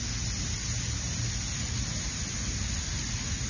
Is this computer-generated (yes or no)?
no